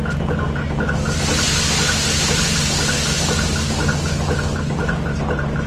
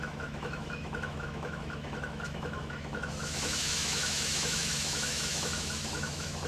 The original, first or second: first